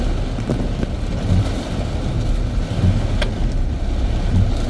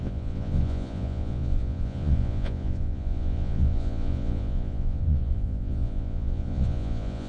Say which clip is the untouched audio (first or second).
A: first